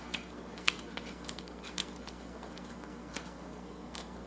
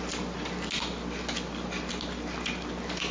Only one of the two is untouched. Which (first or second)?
second